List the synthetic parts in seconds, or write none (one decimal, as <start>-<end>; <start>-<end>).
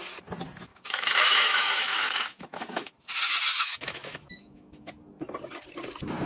0.7-2.9; 3.5-4.9